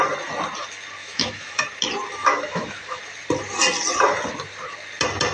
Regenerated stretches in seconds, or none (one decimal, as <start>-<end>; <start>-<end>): 1.0-1.6; 2.2-3.0